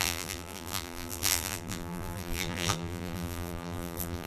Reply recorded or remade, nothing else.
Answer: remade